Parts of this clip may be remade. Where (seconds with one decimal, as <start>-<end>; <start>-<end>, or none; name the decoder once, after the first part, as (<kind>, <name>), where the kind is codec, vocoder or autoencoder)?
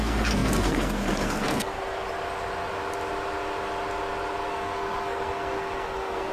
0.0-1.8 (codec, SNAC); 4.5-6.3